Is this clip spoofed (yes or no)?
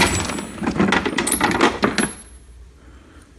no